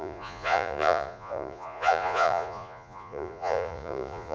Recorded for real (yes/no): no